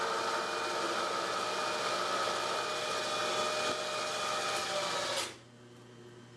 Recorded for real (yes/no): yes